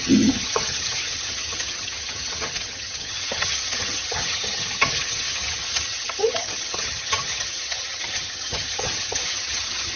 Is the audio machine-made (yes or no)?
yes